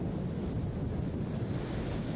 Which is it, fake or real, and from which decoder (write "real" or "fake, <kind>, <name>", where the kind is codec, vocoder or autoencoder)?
real